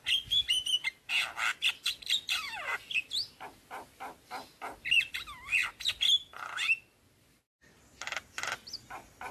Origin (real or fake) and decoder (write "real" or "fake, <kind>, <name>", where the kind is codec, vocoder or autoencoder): real